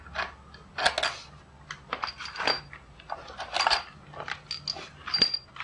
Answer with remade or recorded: recorded